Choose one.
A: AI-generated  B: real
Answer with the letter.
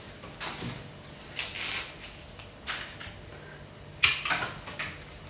B